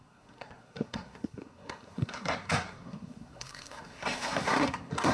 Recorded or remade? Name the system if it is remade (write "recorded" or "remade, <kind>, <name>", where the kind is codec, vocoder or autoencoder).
remade, codec, SNAC